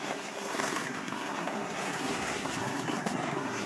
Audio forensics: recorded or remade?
remade